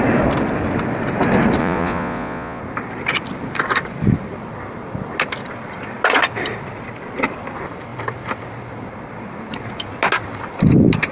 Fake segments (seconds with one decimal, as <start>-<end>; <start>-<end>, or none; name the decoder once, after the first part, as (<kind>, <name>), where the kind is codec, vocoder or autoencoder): 1.6-2.6 (vocoder, Vocos)